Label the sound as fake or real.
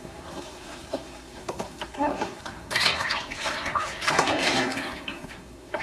fake